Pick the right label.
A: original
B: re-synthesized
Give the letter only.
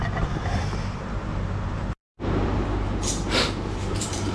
B